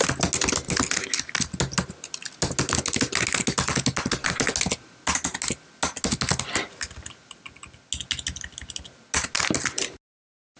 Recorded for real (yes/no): yes